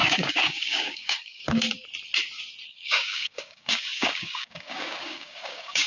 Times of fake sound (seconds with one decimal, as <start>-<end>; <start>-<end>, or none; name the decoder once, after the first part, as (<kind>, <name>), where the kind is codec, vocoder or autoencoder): 0.0-1.7 (codec, DAC); 2.7-5.9